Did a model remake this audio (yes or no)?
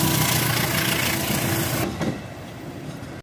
no